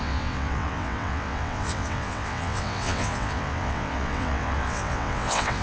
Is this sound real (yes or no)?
no